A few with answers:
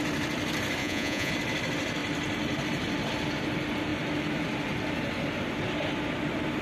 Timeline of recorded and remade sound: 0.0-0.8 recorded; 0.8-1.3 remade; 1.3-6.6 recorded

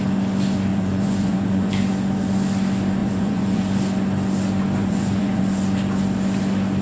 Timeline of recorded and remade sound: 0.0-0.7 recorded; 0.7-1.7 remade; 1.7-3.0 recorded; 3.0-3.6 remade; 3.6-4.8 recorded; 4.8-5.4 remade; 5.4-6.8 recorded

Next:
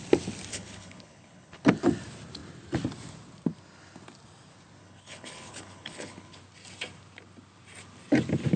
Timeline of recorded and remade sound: 0.0-0.5 recorded; 0.5-1.6 remade; 1.6-4.8 recorded; 4.8-6.4 remade; 6.4-8.6 recorded